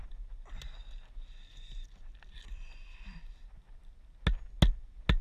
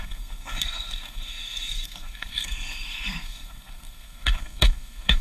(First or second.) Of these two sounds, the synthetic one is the second